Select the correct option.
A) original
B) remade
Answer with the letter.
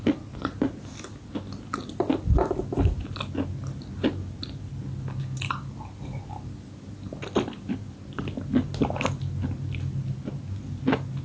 A